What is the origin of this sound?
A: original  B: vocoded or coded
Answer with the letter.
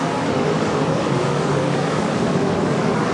B